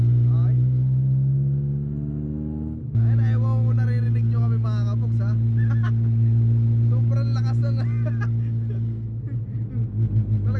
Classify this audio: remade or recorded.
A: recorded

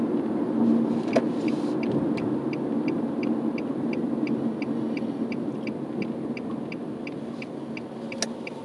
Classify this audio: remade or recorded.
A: recorded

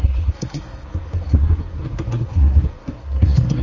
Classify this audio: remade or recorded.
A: remade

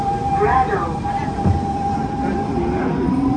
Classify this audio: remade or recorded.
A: remade